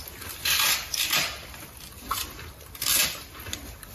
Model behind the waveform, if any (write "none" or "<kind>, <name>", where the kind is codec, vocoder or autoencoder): vocoder, BigVGAN v2